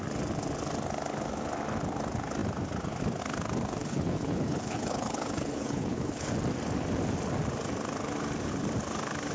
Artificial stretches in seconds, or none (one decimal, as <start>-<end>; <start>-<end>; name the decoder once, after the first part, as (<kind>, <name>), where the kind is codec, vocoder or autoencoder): 3.8-6.3 (codec, HILCodec)